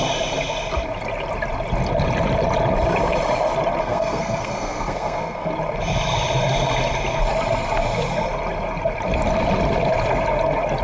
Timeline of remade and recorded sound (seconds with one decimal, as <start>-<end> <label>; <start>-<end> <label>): 0.0-3.8 recorded; 3.8-5.5 remade; 5.5-10.8 recorded